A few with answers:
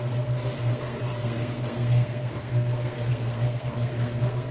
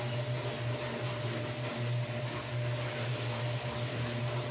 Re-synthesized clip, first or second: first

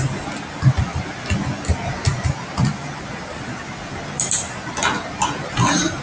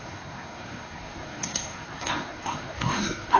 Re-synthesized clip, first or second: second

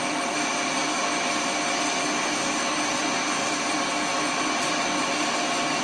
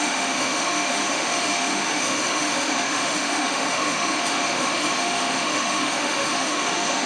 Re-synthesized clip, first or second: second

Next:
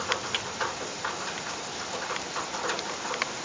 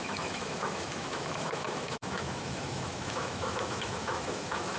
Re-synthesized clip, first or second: second